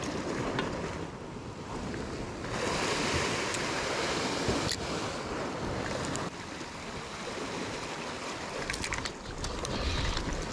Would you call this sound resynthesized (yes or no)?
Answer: no